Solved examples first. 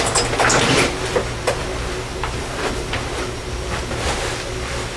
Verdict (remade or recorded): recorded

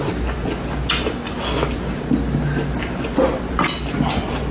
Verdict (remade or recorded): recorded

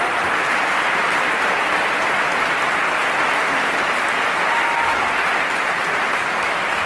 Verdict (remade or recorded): recorded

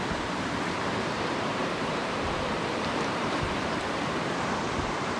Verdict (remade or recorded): remade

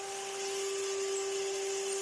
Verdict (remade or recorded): recorded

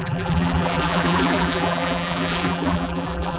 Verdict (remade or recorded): remade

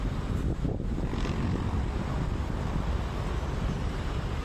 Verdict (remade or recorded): recorded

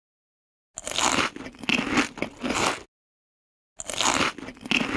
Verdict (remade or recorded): recorded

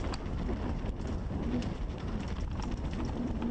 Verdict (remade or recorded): recorded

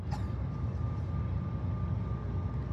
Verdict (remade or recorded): recorded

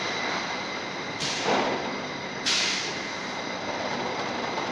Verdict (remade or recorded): remade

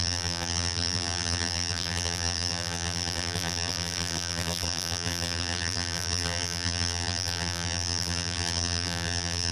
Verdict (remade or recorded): remade